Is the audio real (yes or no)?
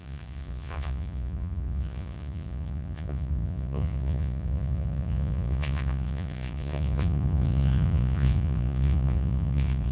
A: no